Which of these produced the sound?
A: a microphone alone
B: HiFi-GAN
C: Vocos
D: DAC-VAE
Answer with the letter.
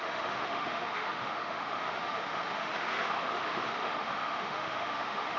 D